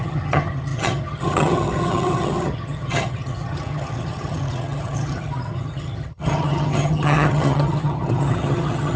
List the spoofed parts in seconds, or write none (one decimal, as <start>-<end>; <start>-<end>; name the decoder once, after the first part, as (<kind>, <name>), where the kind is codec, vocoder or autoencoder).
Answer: 0.0-9.0 (vocoder, HiFi-GAN)